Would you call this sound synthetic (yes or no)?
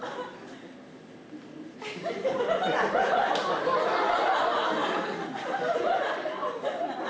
no